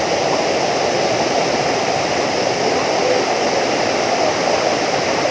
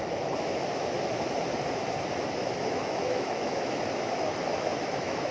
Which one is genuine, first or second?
first